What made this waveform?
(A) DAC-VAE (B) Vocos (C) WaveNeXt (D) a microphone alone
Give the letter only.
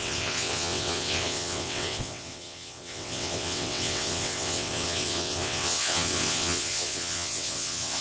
C